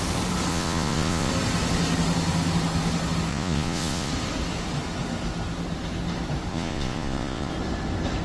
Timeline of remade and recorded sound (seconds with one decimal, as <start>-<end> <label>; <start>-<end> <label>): 0.0-0.5 recorded; 0.5-1.3 remade; 1.3-3.3 recorded; 3.3-4.1 remade; 4.1-6.5 recorded; 6.5-7.5 remade; 7.5-8.2 recorded